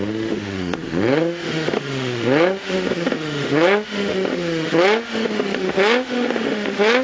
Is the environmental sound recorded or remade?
remade